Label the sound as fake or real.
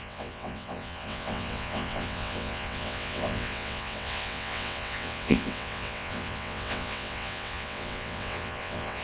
fake